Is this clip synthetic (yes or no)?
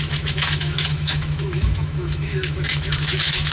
yes